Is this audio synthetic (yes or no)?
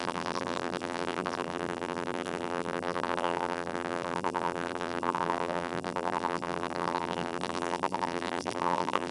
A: yes